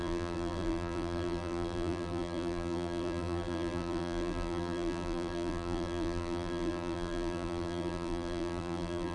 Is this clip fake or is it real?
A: fake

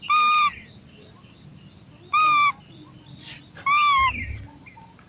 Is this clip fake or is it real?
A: real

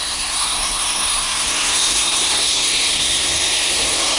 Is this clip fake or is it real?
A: fake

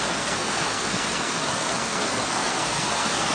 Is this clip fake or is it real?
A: fake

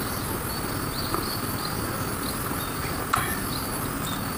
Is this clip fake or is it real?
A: real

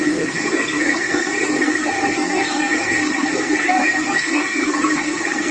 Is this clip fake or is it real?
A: fake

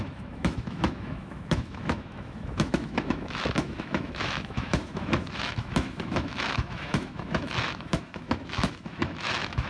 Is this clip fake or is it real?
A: fake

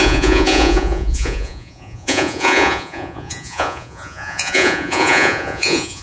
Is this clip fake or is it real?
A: fake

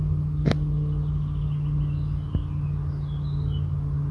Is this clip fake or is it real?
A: real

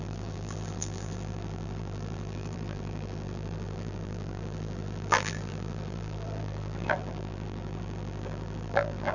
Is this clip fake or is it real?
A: fake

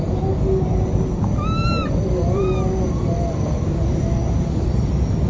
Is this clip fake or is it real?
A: real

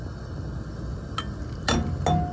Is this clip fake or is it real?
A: real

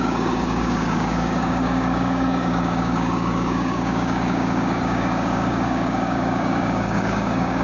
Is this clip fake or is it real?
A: fake